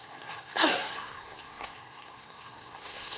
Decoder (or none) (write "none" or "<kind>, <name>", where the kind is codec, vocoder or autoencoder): codec, SNAC